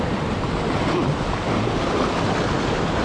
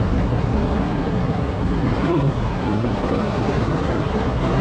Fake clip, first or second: second